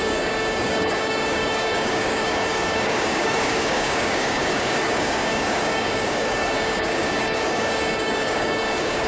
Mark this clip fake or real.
fake